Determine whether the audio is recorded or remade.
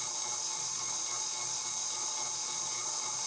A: recorded